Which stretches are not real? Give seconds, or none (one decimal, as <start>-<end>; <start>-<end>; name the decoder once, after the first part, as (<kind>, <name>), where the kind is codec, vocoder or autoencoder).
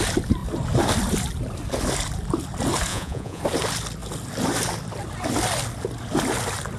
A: 2.9-3.4 (vocoder, Vocos)